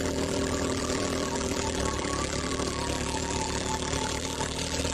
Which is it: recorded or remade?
remade